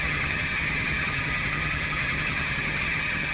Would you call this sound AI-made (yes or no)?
yes